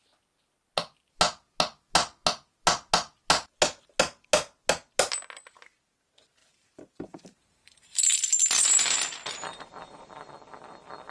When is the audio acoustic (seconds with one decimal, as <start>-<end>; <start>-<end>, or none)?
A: 0.0-6.4; 10.3-11.1